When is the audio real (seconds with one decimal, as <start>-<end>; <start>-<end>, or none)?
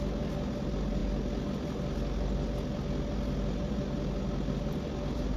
0.0-5.4